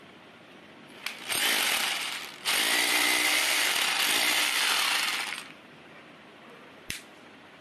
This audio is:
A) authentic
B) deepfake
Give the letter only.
B